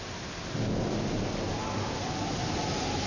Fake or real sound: real